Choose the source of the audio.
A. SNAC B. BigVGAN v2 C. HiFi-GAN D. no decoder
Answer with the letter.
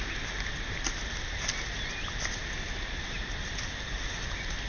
D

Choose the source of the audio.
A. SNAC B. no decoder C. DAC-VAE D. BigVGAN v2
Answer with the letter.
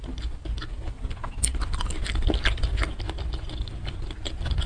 B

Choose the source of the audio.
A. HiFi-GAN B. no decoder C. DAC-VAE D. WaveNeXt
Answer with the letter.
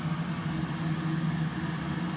B